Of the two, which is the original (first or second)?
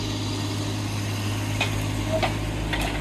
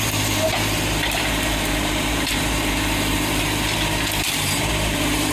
first